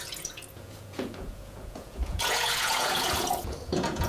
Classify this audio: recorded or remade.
remade